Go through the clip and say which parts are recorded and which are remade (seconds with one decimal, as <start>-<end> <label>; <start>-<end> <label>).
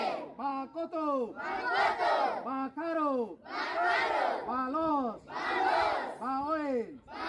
0.0-7.3 recorded